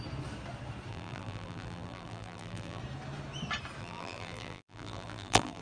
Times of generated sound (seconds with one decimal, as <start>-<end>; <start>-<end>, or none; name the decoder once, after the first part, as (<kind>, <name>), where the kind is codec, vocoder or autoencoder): 0.9-2.8 (vocoder, BigVGAN v2); 3.8-5.6